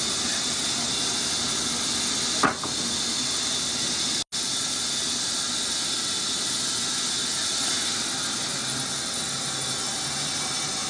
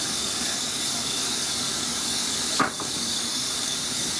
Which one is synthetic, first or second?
second